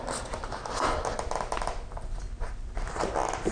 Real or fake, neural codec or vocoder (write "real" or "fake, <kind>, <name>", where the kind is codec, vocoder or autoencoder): real